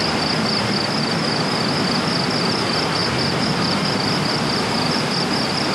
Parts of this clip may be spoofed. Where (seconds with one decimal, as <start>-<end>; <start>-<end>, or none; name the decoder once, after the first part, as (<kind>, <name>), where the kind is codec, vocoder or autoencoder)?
none